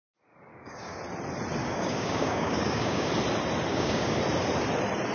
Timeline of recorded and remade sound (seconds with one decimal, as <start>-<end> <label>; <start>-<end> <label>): 0.0-0.5 recorded; 0.5-1.0 remade; 1.0-1.6 recorded; 1.6-3.1 remade; 3.1-3.7 recorded; 3.7-4.2 remade; 4.2-5.1 recorded